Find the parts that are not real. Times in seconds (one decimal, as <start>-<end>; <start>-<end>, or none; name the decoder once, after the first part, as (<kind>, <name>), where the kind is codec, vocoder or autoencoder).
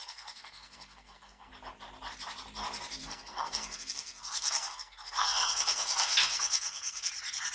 0.0-1.5 (codec, SNAC); 3.0-7.1